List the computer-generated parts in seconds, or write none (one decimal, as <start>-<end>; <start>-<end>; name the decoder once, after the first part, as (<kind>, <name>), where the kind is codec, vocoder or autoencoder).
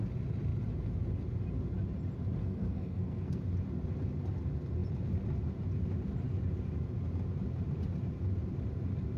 2.4-3.4 (codec, SNAC)